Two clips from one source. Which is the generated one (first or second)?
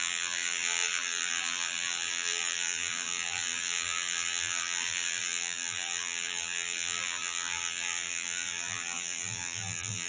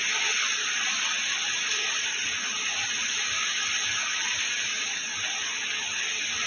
first